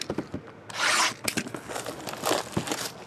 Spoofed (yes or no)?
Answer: no